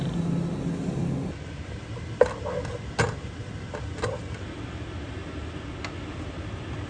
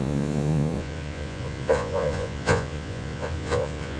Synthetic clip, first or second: second